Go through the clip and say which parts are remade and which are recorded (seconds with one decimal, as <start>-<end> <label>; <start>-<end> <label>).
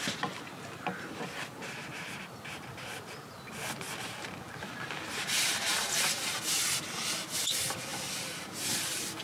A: 0.0-9.2 recorded